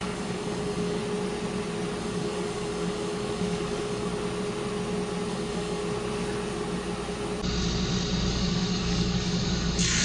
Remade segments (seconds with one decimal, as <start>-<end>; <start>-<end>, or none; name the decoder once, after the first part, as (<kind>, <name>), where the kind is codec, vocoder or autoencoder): 0.0-1.0 (codec, DAC); 2.0-4.1; 5.3-5.8; 8.3-10.0